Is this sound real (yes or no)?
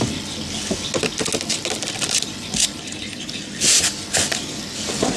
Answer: yes